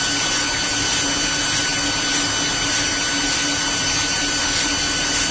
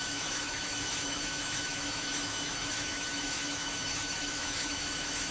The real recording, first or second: first